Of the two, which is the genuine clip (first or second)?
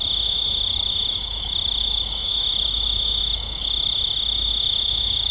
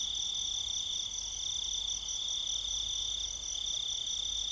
second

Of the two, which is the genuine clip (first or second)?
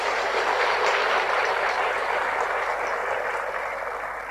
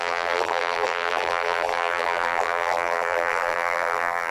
first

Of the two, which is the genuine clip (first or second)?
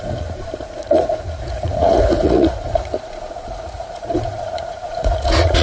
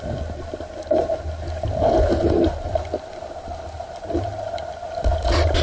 second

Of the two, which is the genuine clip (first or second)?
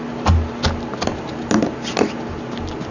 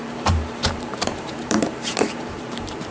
first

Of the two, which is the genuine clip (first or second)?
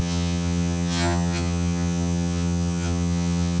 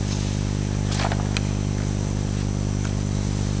second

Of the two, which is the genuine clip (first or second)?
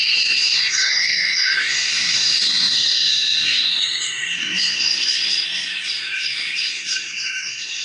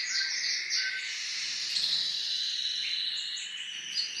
second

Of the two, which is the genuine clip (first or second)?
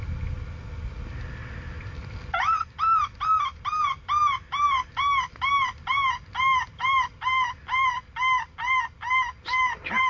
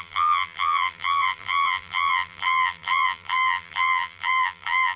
first